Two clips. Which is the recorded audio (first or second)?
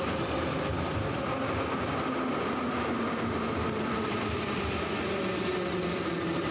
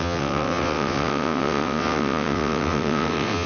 first